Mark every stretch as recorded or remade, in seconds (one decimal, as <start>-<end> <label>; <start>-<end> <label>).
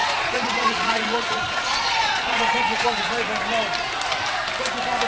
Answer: 0.0-3.1 remade; 3.1-5.1 recorded